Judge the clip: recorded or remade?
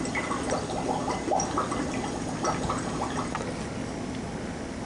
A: recorded